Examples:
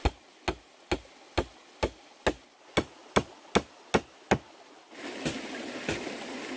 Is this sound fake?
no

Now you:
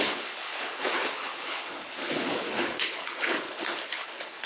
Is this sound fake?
yes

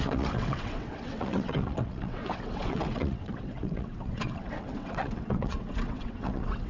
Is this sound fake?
yes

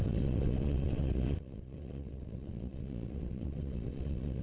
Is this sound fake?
yes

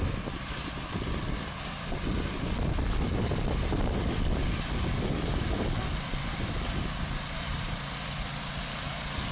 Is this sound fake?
no